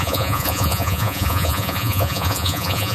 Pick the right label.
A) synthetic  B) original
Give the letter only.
A